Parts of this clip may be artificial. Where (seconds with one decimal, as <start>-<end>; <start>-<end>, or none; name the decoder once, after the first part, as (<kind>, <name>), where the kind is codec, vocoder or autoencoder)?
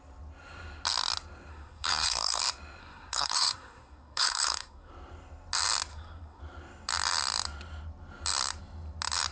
1.5-2.4 (codec, SNAC); 2.8-4.9; 5.9-6.4